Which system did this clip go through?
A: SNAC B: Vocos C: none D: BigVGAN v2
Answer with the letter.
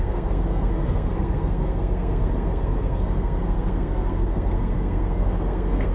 A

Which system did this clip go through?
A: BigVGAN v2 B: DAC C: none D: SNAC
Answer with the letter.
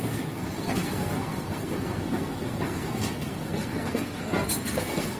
D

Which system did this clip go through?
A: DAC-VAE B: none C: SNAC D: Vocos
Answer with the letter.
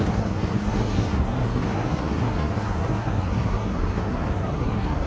C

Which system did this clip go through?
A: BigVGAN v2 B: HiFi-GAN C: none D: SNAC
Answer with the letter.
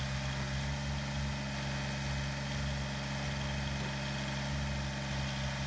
C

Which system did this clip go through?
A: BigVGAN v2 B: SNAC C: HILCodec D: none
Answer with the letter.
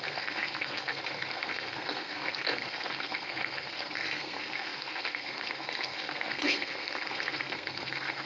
B